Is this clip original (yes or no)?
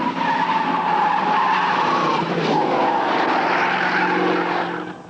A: yes